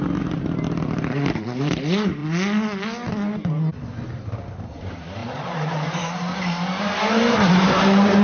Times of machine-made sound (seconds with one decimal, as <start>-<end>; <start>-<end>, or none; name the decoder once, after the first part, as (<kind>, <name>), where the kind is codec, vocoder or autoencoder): 0.0-2.2 (vocoder, BigVGAN v2); 4.7-8.2